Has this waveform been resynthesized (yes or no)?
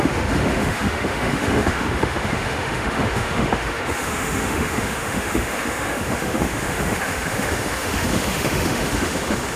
yes